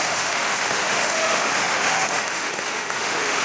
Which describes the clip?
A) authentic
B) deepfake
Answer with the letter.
B